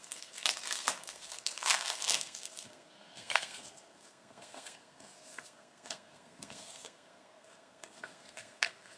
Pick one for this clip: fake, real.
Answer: fake